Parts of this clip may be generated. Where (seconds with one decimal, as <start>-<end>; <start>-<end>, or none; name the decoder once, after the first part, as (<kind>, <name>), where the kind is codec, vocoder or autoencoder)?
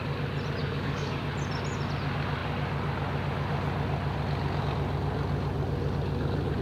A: 0.6-1.2 (codec, DAC)